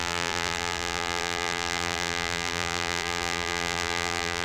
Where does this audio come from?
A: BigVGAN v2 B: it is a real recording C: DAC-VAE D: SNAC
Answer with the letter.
A